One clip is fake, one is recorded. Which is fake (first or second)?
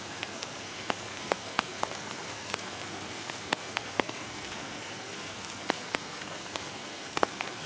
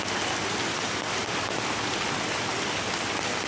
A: first